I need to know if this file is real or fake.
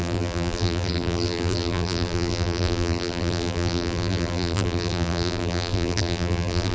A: fake